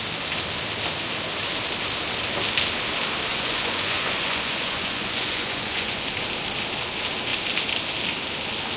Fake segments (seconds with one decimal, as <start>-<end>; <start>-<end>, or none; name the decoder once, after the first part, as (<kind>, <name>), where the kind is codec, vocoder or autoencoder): 3.3-6.1 (vocoder, Vocos)